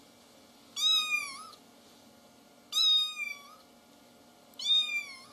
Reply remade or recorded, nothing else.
recorded